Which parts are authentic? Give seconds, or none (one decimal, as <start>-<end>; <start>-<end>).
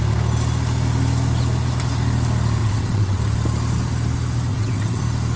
0.0-2.6; 3.2-4.5; 5.0-5.4